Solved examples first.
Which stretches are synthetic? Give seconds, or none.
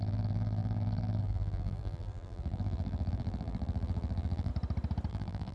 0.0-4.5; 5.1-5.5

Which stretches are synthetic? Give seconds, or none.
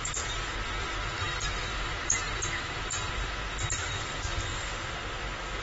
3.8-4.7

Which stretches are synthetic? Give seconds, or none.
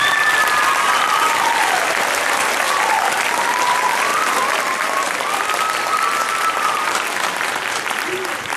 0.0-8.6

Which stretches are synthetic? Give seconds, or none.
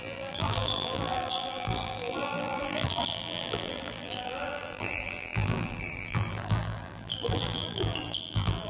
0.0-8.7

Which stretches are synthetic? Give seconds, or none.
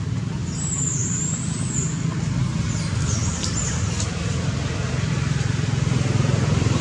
0.4-1.2